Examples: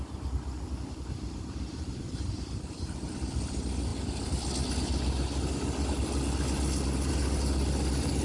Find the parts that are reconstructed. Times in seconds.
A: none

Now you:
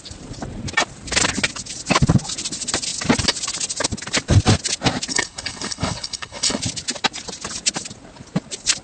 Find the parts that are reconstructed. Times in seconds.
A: 5.1-6.6 (codec, HILCodec)